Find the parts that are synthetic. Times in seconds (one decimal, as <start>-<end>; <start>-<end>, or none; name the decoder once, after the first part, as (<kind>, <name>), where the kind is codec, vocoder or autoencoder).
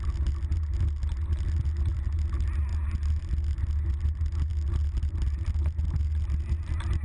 none